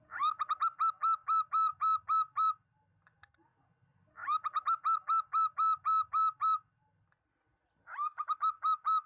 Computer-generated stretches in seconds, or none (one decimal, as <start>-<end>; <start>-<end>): none